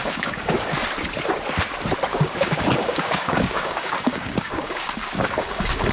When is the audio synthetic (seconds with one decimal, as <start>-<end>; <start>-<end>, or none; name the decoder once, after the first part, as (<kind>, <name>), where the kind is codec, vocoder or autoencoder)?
0.0-0.8 (codec, DAC); 2.1-5.9